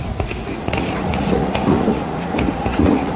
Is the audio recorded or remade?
remade